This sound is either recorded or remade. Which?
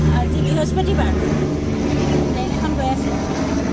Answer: recorded